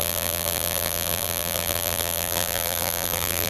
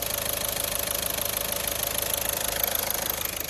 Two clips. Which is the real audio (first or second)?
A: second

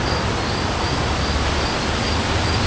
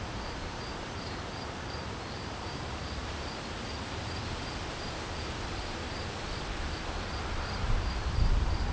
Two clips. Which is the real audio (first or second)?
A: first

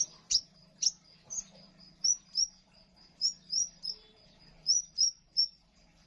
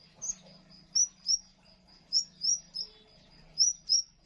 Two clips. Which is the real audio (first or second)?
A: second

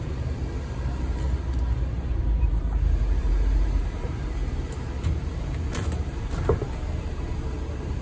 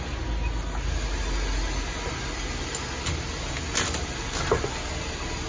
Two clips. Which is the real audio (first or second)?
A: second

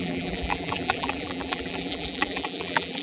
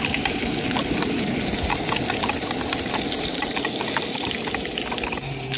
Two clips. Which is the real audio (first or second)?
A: second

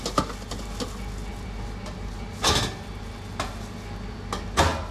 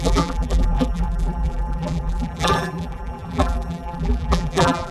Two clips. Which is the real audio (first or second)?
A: first